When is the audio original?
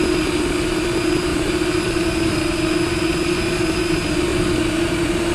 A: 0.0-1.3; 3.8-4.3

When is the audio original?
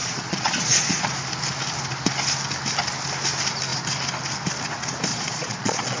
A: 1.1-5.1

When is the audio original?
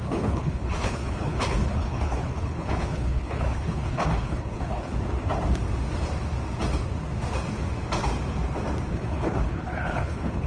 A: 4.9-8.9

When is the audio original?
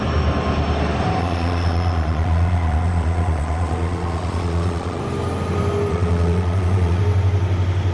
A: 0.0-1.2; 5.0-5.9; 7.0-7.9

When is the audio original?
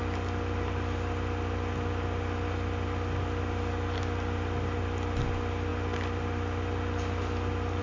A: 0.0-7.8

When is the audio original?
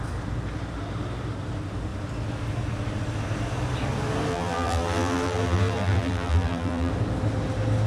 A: 0.0-4.3; 6.9-7.9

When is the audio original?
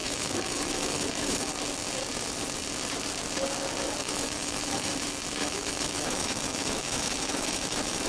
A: 1.5-4.0; 4.9-5.4